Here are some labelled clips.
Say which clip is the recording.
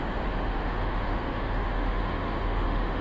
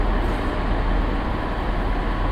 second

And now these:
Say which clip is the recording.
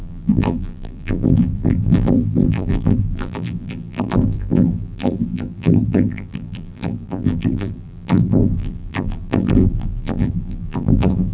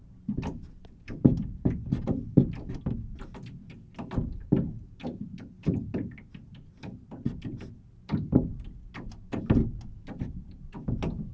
second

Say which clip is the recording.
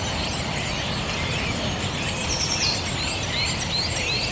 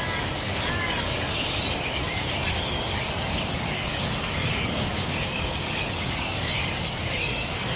first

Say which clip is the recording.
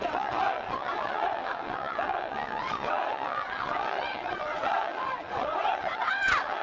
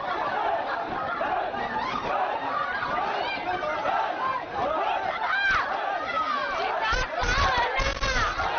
second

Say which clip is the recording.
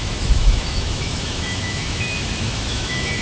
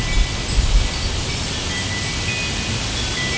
second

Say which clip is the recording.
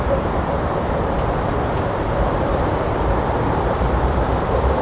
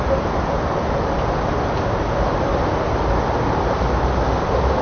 second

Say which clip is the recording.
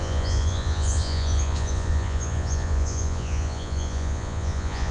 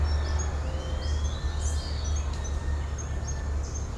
second